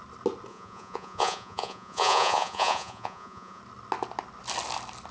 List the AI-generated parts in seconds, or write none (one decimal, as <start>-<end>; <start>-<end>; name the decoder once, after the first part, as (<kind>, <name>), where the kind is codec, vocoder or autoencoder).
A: 0.5-3.6 (vocoder, Vocos)